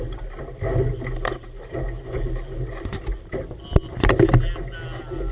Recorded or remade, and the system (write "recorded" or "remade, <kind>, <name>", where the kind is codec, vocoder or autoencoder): recorded